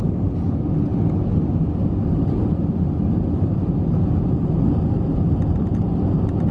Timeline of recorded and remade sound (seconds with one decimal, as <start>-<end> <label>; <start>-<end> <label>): 0.0-6.5 recorded